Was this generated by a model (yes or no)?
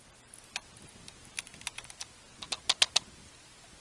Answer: no